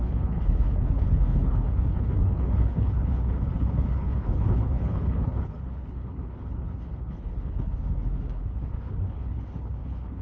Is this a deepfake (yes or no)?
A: yes